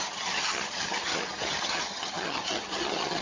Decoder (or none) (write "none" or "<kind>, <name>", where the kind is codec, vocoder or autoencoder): vocoder, HiFi-GAN